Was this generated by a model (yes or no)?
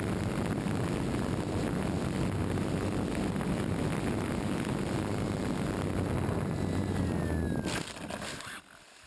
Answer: no